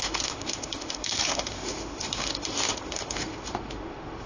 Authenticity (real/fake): fake